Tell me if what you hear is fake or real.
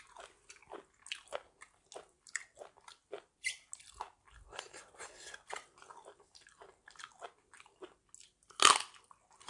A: real